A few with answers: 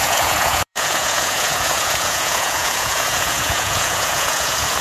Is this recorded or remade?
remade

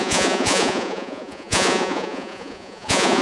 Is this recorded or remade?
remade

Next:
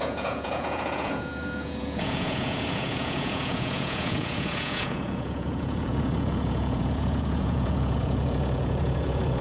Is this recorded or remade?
remade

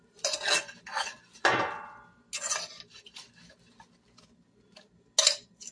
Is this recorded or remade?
recorded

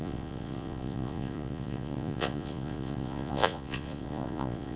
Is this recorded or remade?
remade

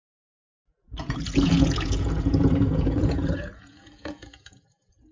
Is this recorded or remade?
remade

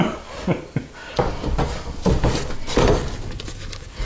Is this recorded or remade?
recorded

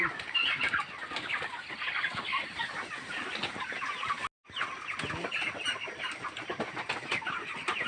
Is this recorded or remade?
recorded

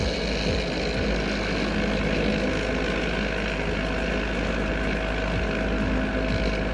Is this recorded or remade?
recorded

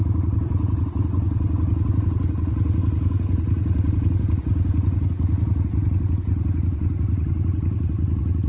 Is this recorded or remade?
remade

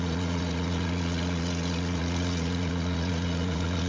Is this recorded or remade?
remade